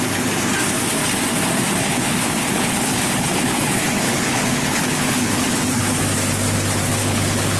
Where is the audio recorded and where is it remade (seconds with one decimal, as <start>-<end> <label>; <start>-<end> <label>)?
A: 0.0-1.8 recorded; 1.8-6.0 remade; 6.0-7.0 recorded; 7.0-7.6 remade